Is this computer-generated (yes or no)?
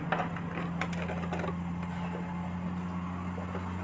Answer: no